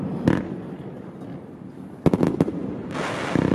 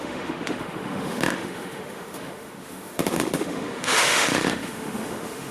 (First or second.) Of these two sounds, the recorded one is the first